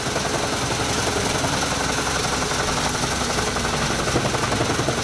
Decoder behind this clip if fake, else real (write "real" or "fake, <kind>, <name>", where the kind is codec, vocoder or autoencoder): real